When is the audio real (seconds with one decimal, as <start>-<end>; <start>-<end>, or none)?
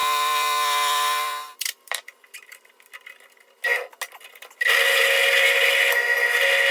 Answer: 2.9-6.7